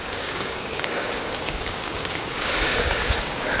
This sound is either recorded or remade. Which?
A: remade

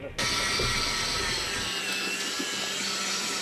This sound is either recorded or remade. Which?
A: recorded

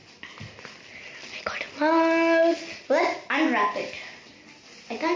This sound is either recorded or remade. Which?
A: recorded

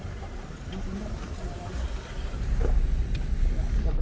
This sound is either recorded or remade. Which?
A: recorded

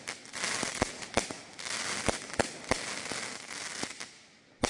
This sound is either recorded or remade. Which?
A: recorded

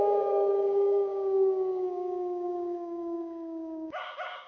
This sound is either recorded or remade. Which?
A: remade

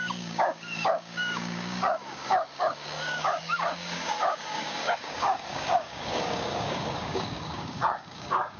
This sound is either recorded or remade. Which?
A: remade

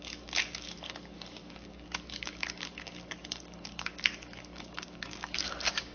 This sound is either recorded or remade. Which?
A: remade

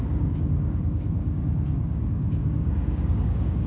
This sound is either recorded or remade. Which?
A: remade